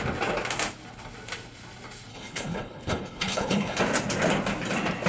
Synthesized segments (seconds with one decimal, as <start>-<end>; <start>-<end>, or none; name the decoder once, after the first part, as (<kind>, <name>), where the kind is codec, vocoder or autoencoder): 2.1-3.8 (codec, HILCodec)